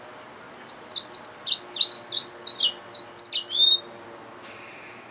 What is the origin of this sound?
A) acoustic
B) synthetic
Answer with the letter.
A